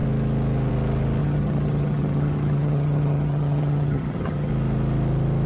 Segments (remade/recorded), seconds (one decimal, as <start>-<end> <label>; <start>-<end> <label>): 0.0-1.2 recorded; 1.2-4.5 remade; 4.5-5.5 recorded